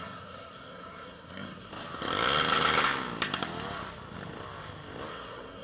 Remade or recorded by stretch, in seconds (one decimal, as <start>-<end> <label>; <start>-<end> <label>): 0.0-1.7 remade; 1.7-5.1 recorded; 5.1-5.6 remade